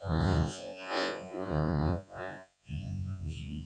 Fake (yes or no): yes